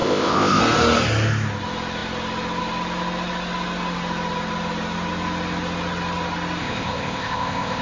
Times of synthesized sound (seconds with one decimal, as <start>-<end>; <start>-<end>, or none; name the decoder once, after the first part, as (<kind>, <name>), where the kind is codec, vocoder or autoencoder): 0.0-0.6 (codec, ZipCodec); 6.6-7.8